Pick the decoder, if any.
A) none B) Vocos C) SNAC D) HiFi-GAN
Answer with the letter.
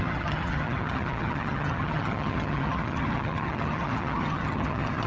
D